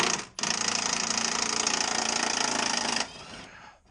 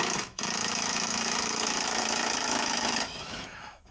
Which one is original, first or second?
first